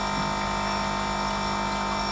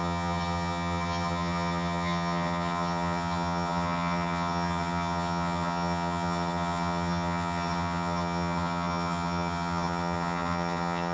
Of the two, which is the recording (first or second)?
first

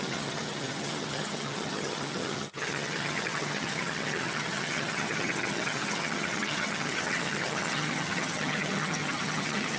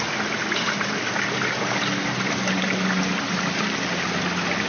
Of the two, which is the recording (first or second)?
second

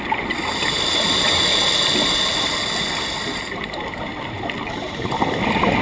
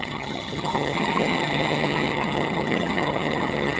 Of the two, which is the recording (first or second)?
first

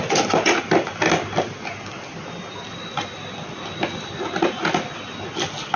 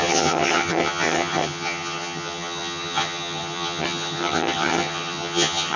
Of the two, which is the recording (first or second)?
first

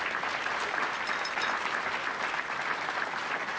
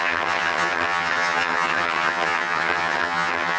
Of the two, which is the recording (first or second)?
first